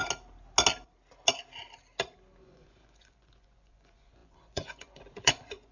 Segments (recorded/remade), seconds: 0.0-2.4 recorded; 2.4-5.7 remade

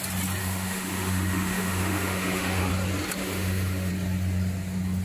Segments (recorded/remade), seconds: 0.0-0.4 recorded; 0.4-2.7 remade; 2.7-3.2 recorded; 3.2-3.9 remade; 3.9-5.0 recorded

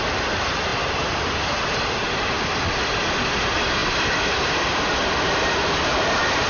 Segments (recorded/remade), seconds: 0.0-3.8 recorded; 3.8-4.4 remade; 4.4-6.5 recorded

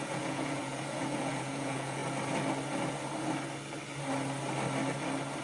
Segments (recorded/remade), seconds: 0.0-2.0 remade; 2.0-5.4 recorded

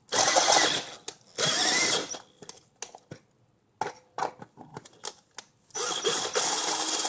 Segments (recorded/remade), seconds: 0.0-7.1 recorded

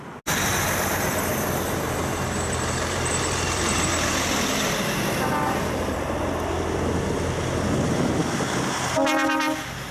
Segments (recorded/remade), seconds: 0.0-1.3 recorded; 1.3-5.9 remade; 5.9-9.9 recorded

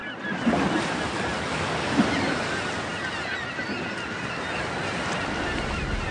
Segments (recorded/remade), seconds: 0.0-6.1 recorded